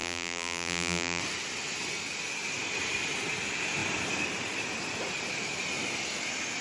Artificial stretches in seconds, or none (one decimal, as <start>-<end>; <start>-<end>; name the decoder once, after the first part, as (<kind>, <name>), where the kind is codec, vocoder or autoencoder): 0.0-1.2 (vocoder, BigVGAN v2)